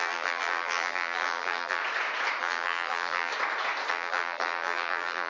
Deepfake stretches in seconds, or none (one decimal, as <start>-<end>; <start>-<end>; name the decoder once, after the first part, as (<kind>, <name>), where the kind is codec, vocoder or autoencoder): 0.0-1.8 (vocoder, BigVGAN v2); 2.4-3.3; 3.9-5.3